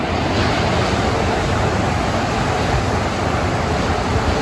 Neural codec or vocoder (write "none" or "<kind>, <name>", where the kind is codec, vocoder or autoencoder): none